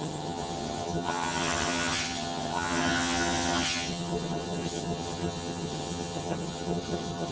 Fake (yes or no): yes